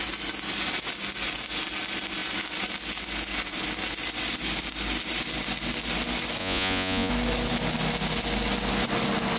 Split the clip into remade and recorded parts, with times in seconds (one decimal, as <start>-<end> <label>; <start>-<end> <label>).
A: 0.0-6.4 recorded; 6.4-7.1 remade; 7.1-9.4 recorded